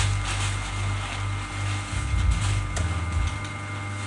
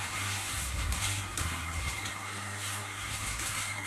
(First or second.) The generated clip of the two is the second